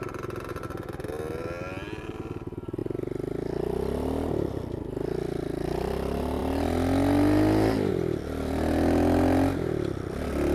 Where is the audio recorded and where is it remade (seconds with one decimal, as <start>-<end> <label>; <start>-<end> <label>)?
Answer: 0.0-10.5 recorded